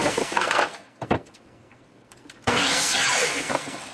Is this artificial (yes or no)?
yes